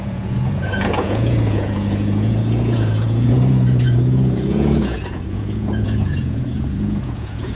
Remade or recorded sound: remade